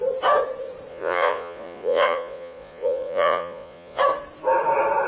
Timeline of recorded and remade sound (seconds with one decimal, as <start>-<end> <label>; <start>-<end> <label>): 0.0-0.9 recorded; 0.9-4.0 remade; 4.0-5.1 recorded